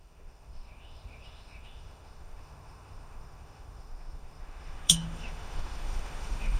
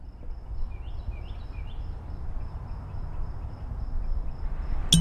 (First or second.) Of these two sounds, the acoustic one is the second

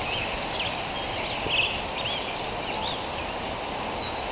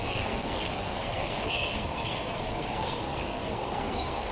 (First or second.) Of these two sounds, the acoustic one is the first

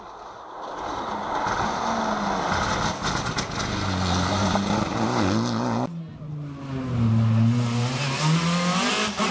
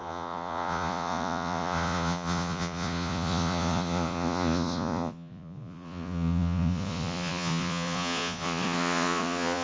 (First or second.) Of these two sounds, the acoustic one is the first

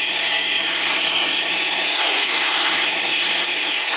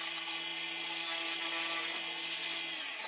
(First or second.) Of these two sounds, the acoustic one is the second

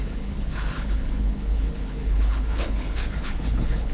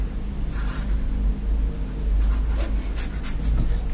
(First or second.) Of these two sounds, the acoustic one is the second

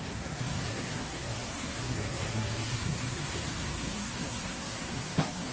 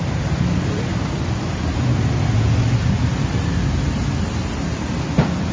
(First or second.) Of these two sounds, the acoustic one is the second